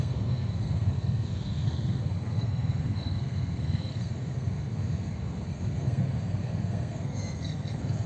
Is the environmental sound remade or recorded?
remade